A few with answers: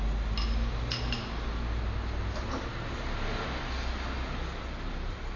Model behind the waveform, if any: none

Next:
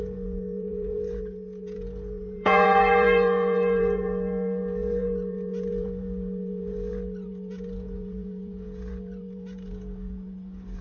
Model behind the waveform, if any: vocoder, Vocos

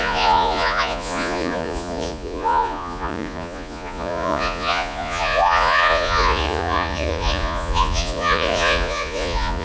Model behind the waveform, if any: vocoder, Vocos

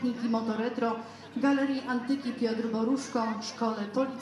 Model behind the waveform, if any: none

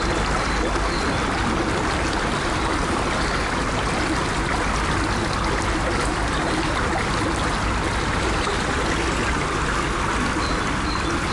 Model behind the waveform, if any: none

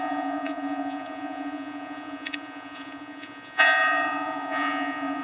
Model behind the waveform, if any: vocoder, Vocos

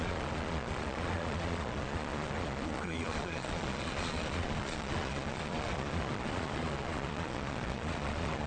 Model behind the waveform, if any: vocoder, Vocos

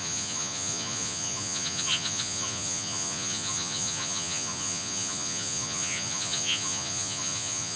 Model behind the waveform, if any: vocoder, Vocos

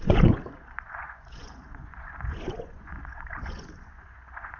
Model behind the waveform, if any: vocoder, Vocos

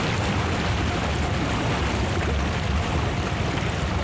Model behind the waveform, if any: none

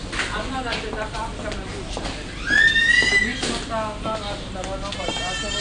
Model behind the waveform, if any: none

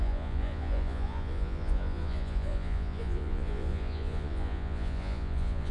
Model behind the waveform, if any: vocoder, Vocos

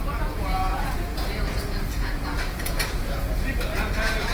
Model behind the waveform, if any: vocoder, Vocos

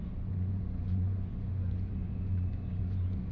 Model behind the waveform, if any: vocoder, Vocos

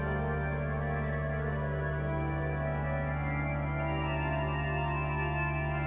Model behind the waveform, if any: none